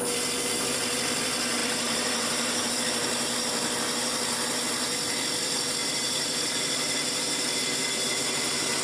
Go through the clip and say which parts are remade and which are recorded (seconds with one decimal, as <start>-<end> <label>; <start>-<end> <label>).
0.0-1.6 recorded; 1.6-2.7 remade; 2.7-5.8 recorded; 5.8-8.8 remade